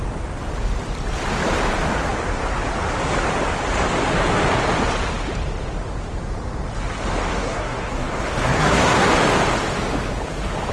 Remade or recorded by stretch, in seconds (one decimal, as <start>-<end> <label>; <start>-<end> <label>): 0.0-7.3 recorded; 7.3-9.1 remade; 9.1-10.7 recorded